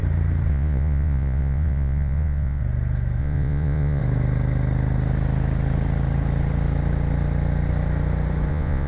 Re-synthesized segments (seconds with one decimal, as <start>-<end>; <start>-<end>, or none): 0.5-2.6; 3.2-4.0; 8.5-8.9